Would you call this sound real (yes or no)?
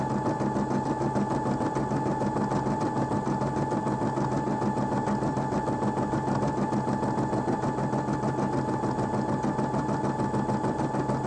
yes